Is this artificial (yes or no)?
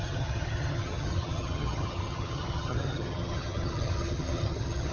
yes